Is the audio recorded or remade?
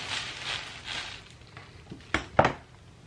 recorded